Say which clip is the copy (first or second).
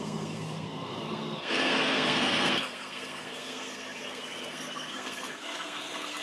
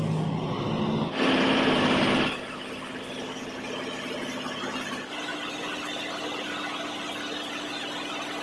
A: first